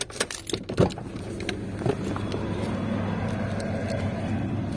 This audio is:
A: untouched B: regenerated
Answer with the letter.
A